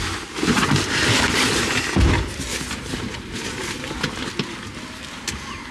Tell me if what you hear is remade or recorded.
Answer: recorded